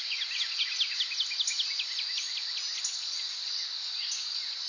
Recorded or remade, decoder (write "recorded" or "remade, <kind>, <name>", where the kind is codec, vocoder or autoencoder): recorded